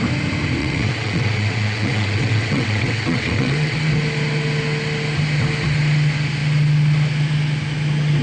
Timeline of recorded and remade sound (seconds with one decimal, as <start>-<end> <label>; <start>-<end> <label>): 0.0-0.6 recorded; 0.6-3.9 remade; 3.9-8.2 recorded